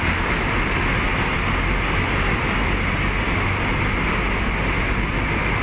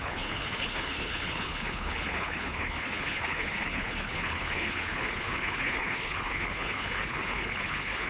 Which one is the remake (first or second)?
second